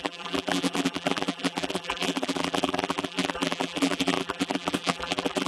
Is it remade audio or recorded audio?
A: remade